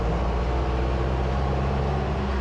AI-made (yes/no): no